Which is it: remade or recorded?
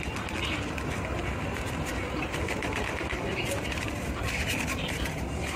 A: recorded